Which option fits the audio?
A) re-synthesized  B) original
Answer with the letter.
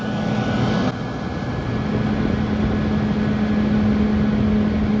B